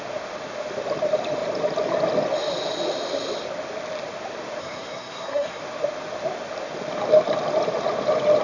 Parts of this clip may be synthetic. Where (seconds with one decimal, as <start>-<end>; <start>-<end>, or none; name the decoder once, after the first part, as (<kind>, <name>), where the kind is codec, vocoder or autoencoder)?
4.6-5.6 (codec, SNAC)